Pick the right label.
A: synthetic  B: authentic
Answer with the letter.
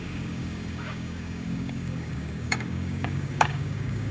A